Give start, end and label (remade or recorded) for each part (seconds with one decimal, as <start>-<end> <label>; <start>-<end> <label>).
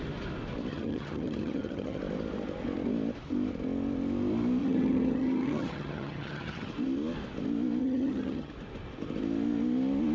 0.0-0.7 recorded; 0.7-2.0 remade; 2.0-4.6 recorded; 4.6-6.7 remade; 6.7-7.8 recorded; 7.8-8.5 remade; 8.5-10.1 recorded